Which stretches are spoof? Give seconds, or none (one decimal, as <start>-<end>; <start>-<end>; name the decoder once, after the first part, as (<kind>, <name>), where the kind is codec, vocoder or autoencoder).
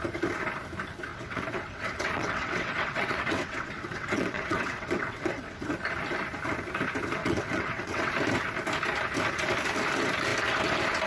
1.1-5.7 (vocoder, WaveNeXt); 7.2-8.1